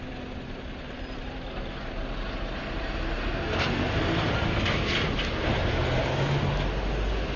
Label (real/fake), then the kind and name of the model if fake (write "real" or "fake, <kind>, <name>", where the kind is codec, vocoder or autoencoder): real